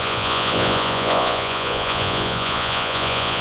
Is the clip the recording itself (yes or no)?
no